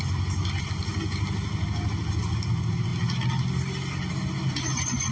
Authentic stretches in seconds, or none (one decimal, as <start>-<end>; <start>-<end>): 0.0-5.1